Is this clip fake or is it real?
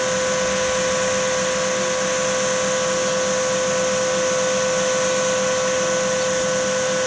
real